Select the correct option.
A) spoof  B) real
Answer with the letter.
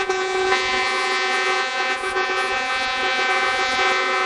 A